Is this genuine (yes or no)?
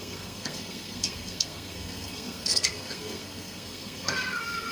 no